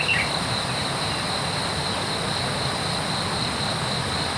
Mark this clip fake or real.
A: real